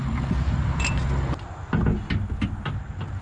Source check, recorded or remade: recorded